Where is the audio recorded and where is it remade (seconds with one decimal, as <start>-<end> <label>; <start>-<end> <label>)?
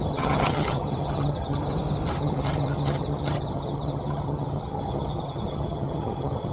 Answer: 0.0-1.6 remade; 1.6-2.2 recorded; 2.2-6.5 remade